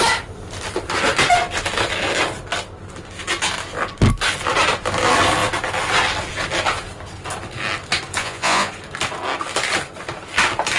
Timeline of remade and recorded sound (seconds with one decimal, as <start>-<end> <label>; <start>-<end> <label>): 0.0-8.2 recorded; 8.2-8.7 remade; 8.7-10.8 recorded